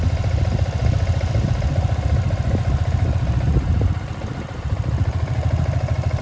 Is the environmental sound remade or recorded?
recorded